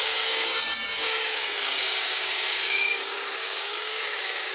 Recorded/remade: remade